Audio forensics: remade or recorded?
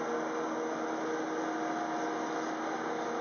recorded